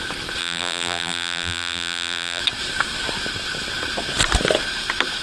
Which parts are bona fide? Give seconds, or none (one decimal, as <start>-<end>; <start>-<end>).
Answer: 0.0-0.4; 2.4-5.2

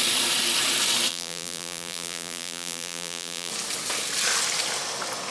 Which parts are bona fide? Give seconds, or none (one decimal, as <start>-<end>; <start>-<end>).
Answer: 0.0-1.1; 3.5-5.3

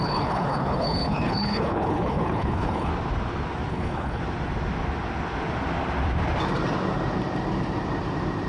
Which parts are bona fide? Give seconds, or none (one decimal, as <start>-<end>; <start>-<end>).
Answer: 2.9-3.7; 4.2-8.5

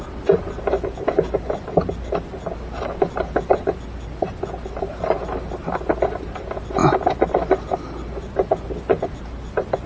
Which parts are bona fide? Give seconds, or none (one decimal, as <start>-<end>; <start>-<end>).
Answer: 0.0-9.9